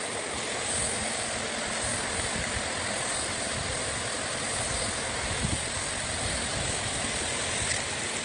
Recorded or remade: recorded